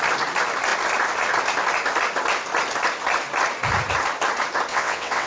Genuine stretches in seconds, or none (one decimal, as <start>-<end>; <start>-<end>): 0.0-4.7